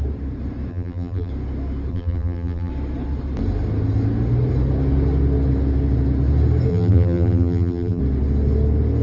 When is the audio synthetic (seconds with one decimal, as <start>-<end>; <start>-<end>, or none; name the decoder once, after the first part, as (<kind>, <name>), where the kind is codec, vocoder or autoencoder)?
0.7-1.3 (vocoder, BigVGAN v2); 1.9-2.7; 6.7-8.0